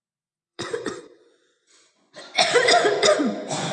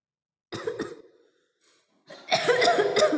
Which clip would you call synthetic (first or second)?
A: first